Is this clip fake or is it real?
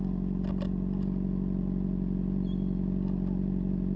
real